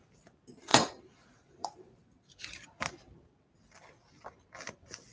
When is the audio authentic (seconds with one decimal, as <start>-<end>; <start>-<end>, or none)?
0.0-0.7; 2.9-5.1